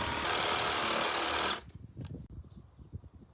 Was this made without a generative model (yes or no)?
yes